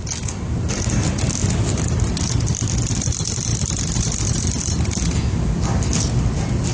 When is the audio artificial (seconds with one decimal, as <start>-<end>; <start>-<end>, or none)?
none